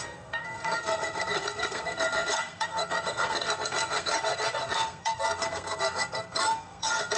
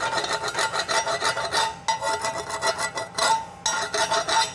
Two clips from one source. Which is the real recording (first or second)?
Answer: second